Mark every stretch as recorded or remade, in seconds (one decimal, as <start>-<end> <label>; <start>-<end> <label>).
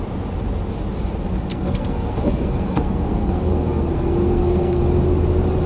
0.0-1.5 recorded; 1.5-4.8 remade; 4.8-5.7 recorded